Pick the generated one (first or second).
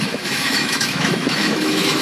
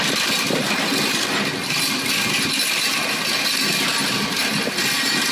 first